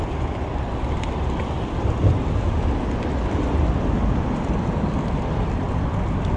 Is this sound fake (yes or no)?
yes